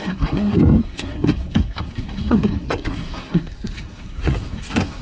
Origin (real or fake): fake